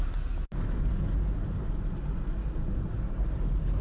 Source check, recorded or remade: recorded